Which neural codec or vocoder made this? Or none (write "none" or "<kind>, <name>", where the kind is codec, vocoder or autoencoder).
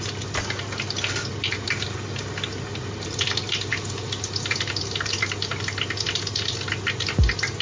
none